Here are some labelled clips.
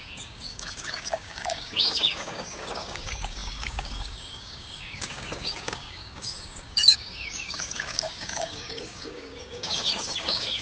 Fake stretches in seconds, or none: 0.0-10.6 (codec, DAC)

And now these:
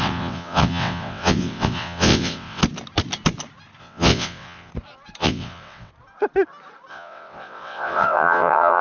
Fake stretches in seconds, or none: 0.0-2.6 (vocoder, WaveNeXt); 3.8-4.7; 5.2-5.9; 6.9-8.8

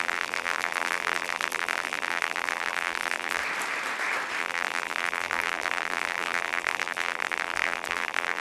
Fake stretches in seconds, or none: 0.0-3.4 (vocoder, BigVGAN v2); 4.4-8.4

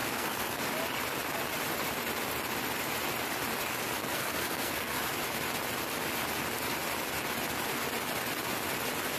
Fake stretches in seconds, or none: 0.0-0.7 (codec, SNAC); 4.0-5.1

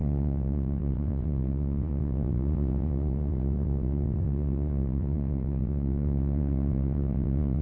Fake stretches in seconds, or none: 0.0-7.6 (vocoder, WaveNeXt)